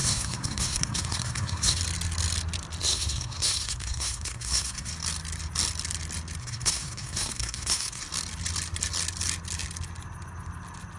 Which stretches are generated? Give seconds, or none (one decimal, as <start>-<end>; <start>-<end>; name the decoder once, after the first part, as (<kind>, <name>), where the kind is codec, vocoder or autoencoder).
0.0-1.8 (codec, SNAC); 2.8-4.9; 6.4-8.0

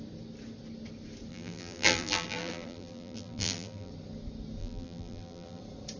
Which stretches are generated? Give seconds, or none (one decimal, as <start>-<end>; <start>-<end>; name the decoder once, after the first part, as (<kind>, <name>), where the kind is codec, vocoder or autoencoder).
1.3-3.9 (vocoder, BigVGAN v2); 4.6-5.6